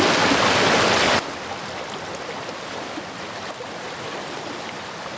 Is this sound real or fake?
real